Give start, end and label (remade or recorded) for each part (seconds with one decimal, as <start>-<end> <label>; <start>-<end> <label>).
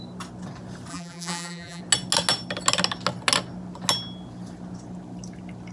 0.0-0.9 recorded; 0.9-1.8 remade; 1.8-5.7 recorded